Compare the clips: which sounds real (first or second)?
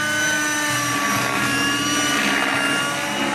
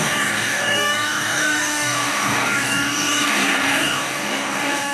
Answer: first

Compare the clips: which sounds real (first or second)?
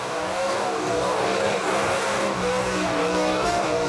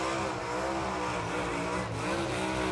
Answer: second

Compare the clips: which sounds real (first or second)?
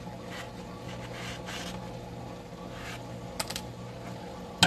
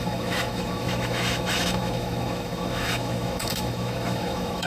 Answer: first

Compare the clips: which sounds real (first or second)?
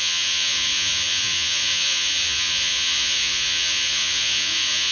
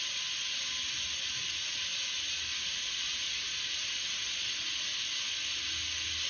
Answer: second